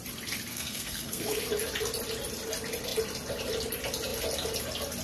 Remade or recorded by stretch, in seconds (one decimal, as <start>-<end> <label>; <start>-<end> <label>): 0.0-0.5 recorded; 0.5-1.4 remade; 1.4-5.0 recorded